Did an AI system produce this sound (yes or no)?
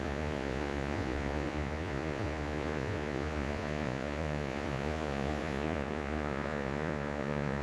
yes